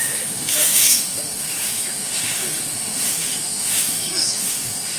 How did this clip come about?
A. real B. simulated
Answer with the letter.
B